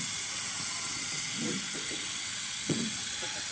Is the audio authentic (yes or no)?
no